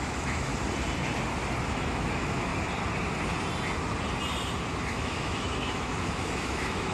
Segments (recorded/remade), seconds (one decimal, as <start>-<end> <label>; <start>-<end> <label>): 0.0-0.5 remade; 0.5-1.6 recorded; 1.6-2.5 remade; 2.5-4.9 recorded; 4.9-6.9 remade